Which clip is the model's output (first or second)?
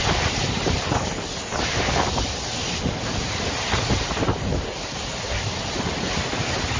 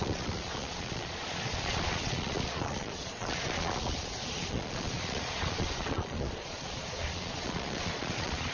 second